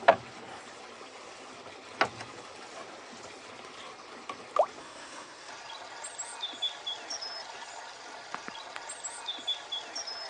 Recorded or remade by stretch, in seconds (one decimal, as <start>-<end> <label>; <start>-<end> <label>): 0.0-4.8 recorded; 4.8-5.5 remade; 5.5-10.3 recorded